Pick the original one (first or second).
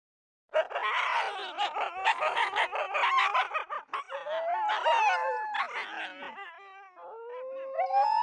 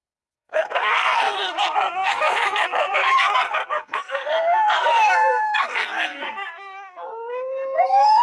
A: first